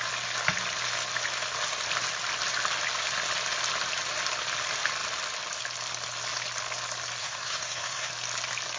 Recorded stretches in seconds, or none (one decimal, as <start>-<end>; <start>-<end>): 0.0-7.2; 8.1-8.8